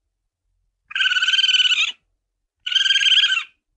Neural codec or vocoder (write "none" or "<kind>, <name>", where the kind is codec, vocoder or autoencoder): none